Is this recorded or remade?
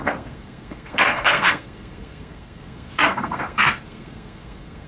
remade